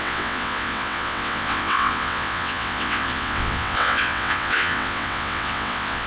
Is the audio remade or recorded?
remade